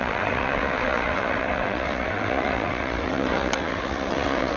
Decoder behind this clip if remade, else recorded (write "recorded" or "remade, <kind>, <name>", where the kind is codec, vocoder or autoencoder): remade, vocoder, WaveNeXt